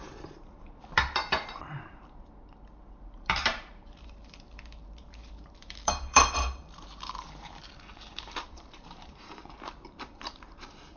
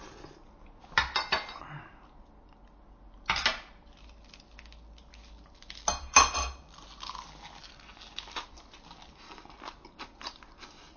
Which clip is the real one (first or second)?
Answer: second